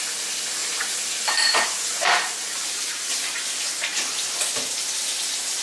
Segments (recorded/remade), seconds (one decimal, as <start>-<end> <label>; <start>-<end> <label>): 0.0-0.6 recorded; 0.6-3.5 remade; 3.5-5.6 recorded